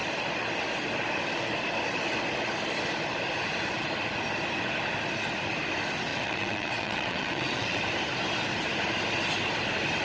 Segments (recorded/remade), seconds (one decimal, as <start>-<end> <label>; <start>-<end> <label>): 0.0-6.1 recorded; 6.1-7.8 remade; 7.8-10.0 recorded